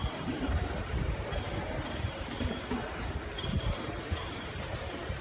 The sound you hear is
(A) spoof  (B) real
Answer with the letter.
A